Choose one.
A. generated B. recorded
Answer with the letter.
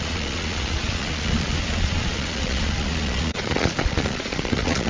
A